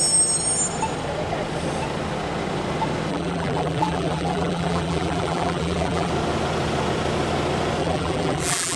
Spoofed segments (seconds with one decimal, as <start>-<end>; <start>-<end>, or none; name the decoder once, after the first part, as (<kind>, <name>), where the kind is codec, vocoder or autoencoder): 3.1-6.1 (vocoder, BigVGAN v2); 7.8-8.8